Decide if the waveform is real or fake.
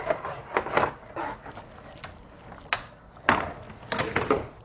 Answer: real